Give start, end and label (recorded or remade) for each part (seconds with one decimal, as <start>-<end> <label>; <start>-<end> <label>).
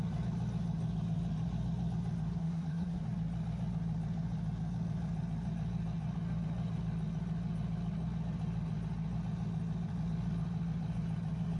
0.0-2.4 recorded; 2.4-3.0 remade; 3.0-11.6 recorded